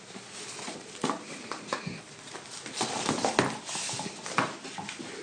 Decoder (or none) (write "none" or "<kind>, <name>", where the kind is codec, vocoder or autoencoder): none